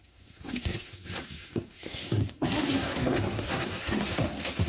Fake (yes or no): yes